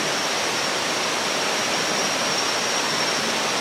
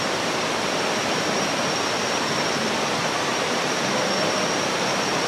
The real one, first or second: first